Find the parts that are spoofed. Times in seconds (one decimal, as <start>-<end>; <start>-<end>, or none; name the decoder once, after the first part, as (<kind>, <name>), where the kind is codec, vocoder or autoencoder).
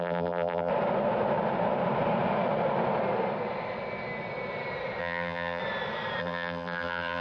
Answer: 0.0-0.7 (vocoder, BigVGAN v2); 5.0-5.6; 6.2-7.2